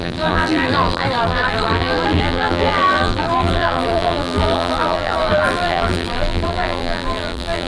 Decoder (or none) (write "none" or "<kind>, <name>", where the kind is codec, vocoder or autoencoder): vocoder, BigVGAN v2